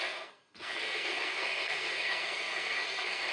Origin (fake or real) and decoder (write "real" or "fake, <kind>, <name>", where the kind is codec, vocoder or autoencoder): fake, codec, SNAC